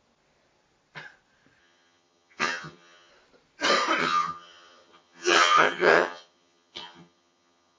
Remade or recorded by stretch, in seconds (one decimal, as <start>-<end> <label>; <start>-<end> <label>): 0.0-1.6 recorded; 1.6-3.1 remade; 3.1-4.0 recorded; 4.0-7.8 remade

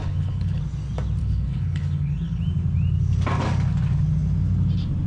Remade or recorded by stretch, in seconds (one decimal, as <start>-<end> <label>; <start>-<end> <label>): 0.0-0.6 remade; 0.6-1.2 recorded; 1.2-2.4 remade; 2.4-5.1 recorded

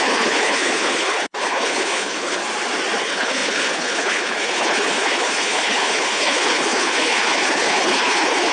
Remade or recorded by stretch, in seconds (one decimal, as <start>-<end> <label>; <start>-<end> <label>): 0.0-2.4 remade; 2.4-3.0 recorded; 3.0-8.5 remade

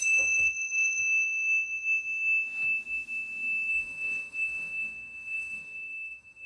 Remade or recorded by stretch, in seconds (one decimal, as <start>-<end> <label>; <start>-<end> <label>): 0.0-1.0 remade; 1.0-3.7 recorded; 3.7-6.5 remade

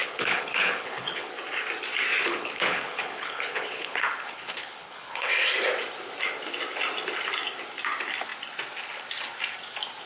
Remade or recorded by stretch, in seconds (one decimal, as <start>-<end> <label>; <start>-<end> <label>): 0.0-1.3 remade; 1.3-2.2 recorded; 2.2-5.3 remade; 5.3-10.1 recorded